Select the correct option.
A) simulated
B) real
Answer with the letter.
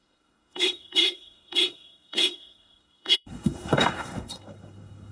A